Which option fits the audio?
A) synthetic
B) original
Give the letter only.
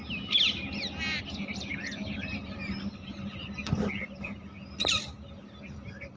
B